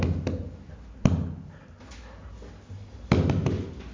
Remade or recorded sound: recorded